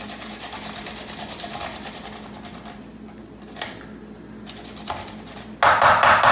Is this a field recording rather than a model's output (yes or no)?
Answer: yes